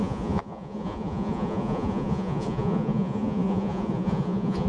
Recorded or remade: remade